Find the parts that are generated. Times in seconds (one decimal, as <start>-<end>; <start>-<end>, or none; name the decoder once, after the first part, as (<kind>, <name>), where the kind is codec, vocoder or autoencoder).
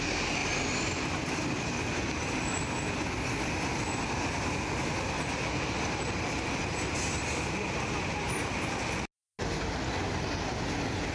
0.4-1.5 (vocoder, BigVGAN v2)